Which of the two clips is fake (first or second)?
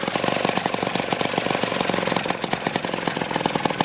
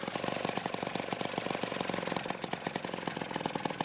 second